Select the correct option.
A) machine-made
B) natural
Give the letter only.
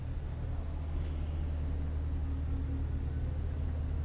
B